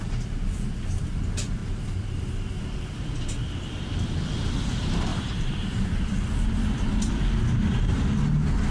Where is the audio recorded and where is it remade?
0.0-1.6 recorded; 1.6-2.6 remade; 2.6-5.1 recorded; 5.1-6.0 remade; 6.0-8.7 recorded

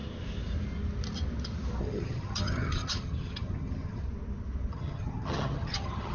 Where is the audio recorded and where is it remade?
0.0-1.8 recorded; 1.8-4.0 remade; 4.0-4.7 recorded; 4.7-6.1 remade

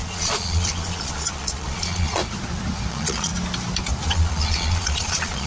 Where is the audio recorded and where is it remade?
0.0-2.2 remade; 2.2-2.9 recorded; 2.9-3.3 remade; 3.3-4.0 recorded; 4.0-5.5 remade

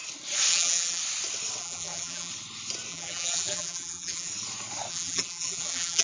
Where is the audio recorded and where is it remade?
0.0-0.5 recorded; 0.5-1.0 remade; 1.0-1.6 recorded; 1.6-2.3 remade; 2.3-2.9 recorded; 2.9-4.3 remade; 4.3-4.9 recorded; 4.9-6.0 remade

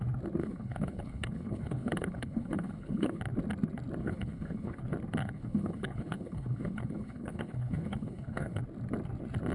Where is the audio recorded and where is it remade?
0.0-0.4 recorded; 0.4-3.2 remade; 3.2-4.0 recorded; 4.0-4.8 remade; 4.8-5.2 recorded; 5.2-8.6 remade; 8.6-9.5 recorded